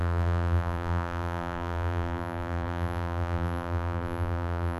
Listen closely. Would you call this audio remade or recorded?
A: remade